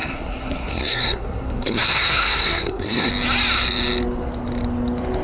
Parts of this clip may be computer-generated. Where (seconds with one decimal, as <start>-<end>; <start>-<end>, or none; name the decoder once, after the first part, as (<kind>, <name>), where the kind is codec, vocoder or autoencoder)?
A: 0.0-3.1 (codec, SNAC)